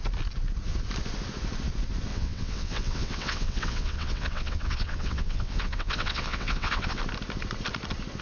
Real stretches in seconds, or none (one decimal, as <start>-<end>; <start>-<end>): 0.0-2.1; 7.0-8.2